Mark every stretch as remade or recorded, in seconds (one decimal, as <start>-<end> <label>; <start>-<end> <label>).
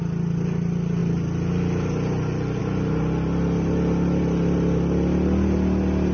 0.0-6.1 recorded